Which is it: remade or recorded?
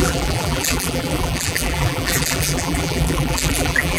remade